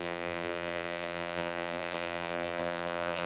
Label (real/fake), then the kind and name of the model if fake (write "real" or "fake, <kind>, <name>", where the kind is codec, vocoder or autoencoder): fake, vocoder, BigVGAN v2